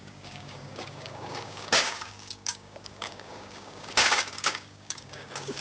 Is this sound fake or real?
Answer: fake